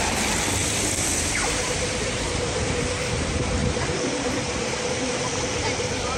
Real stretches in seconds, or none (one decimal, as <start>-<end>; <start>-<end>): 3.6-5.4